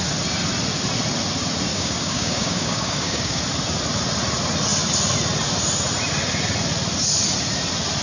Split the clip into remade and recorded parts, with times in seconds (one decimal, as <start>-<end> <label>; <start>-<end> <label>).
0.0-1.7 recorded; 1.7-3.4 remade; 3.4-8.0 recorded